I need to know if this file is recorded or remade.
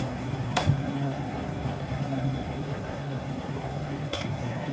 remade